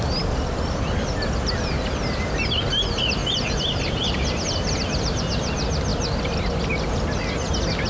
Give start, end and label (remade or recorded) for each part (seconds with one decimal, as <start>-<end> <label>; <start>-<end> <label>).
0.0-7.9 recorded